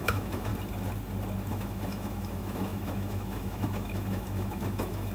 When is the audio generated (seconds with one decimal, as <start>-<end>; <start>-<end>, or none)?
0.0-0.5; 1.5-5.1